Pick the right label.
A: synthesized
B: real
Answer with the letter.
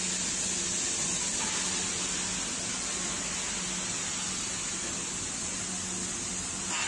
B